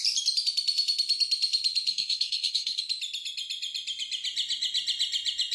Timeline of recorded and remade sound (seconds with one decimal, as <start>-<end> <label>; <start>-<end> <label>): 0.0-1.9 recorded; 1.9-2.8 remade; 2.8-5.5 recorded